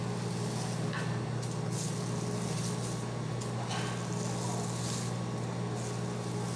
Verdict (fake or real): real